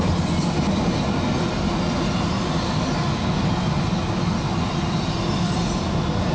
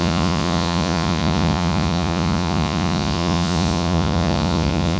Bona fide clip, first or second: first